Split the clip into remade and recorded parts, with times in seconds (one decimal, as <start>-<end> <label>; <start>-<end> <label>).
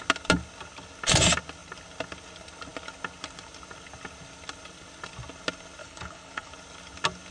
0.0-5.8 recorded; 5.8-6.5 remade; 6.5-7.3 recorded